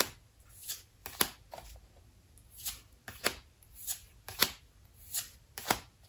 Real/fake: real